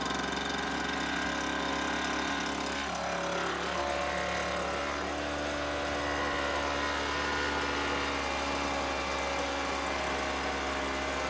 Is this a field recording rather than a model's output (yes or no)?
yes